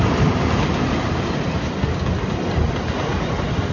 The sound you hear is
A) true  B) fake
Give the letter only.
A